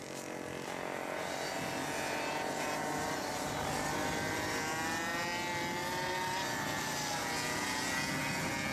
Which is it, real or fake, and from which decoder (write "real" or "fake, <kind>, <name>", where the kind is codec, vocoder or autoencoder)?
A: real